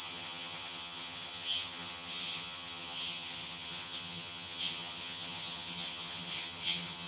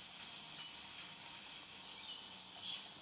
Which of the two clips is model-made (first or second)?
first